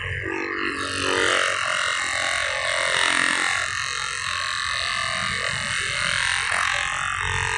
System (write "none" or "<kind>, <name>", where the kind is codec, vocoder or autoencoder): none